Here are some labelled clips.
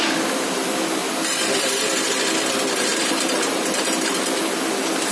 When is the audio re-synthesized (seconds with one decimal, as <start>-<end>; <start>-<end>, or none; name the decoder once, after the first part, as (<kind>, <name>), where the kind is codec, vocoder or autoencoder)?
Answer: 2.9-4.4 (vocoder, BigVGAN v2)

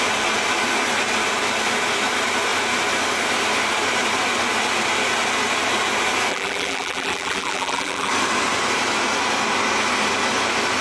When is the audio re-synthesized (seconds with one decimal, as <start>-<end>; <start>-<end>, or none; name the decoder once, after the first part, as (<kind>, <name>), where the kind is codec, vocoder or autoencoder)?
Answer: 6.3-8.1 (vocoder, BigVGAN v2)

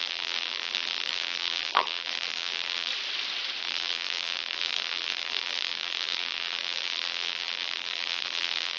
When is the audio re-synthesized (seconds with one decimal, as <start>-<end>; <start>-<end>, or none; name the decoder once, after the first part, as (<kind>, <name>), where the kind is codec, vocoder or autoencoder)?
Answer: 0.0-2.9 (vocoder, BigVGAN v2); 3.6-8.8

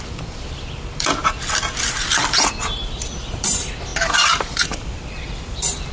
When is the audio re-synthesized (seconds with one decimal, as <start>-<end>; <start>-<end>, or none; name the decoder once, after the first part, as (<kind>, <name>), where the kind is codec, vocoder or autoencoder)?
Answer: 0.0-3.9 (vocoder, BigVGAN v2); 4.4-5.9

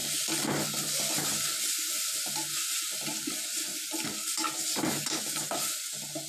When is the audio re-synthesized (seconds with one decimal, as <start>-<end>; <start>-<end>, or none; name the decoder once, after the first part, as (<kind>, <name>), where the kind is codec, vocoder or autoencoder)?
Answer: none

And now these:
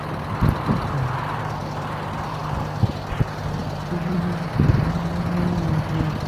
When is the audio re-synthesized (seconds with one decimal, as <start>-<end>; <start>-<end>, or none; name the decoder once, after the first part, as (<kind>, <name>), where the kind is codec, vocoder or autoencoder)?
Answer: 1.6-2.4 (vocoder, BigVGAN v2); 3.6-4.2